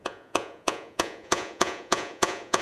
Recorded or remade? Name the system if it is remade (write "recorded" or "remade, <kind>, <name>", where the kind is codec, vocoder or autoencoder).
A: remade, vocoder, Vocos